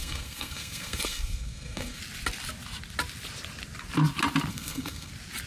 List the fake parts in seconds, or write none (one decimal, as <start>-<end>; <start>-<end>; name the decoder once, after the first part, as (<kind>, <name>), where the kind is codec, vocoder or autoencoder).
0.0-2.0 (codec, SNAC); 4.5-5.1